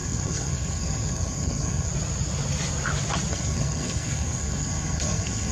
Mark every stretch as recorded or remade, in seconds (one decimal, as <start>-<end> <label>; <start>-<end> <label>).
0.0-1.9 remade; 1.9-3.3 recorded; 3.3-5.5 remade